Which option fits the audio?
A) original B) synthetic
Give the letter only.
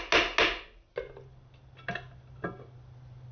A